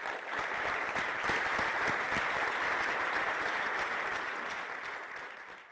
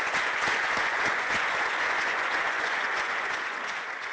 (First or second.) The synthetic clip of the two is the second